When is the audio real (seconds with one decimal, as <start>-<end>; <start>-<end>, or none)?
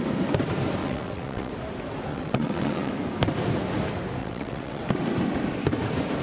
0.0-0.8; 1.5-2.1; 2.9-4.2; 4.8-6.2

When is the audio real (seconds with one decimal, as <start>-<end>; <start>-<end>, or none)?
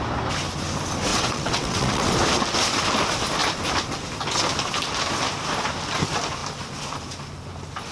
0.0-1.1; 2.1-7.9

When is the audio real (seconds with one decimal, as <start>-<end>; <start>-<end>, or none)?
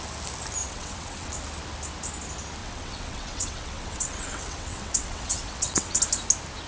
0.0-0.6; 1.3-2.6; 6.0-6.7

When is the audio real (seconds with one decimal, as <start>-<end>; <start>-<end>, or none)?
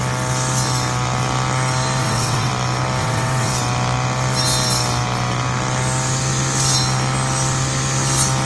0.0-2.0; 2.5-3.0; 3.5-8.5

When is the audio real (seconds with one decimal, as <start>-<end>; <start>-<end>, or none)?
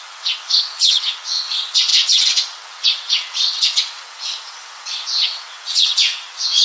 none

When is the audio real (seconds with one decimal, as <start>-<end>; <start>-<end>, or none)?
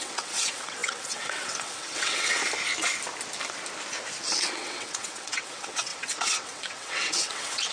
2.4-4.5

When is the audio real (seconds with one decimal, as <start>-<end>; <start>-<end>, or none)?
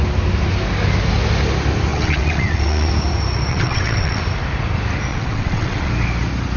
0.0-1.9; 2.9-3.5; 4.2-5.1; 5.9-6.6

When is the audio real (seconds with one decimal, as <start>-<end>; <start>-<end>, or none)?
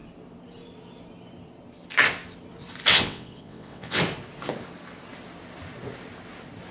0.0-2.9; 4.0-6.7